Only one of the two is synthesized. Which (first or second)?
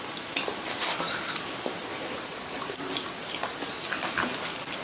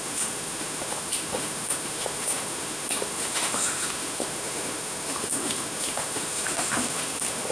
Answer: second